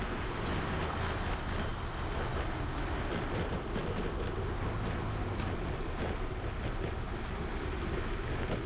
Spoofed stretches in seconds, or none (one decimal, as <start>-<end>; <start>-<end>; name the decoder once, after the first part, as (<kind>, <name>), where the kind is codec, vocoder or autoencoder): none